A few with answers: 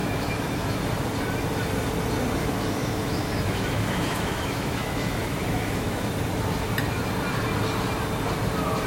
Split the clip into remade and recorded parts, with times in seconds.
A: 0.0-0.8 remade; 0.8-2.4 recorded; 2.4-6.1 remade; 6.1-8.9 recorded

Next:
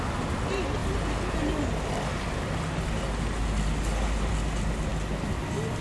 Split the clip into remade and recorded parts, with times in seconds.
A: 0.0-5.8 recorded

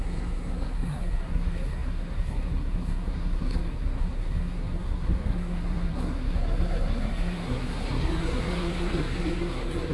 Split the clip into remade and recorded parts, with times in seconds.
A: 0.0-9.9 remade

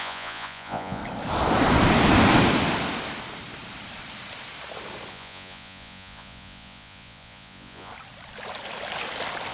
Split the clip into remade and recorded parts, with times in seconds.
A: 0.0-1.0 remade; 1.0-5.1 recorded; 5.1-7.9 remade; 7.9-9.5 recorded